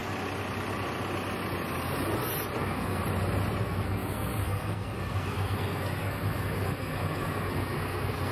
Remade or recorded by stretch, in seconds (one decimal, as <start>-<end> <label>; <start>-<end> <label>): 0.0-2.6 recorded; 2.6-3.0 remade; 3.0-3.6 recorded; 3.6-8.3 remade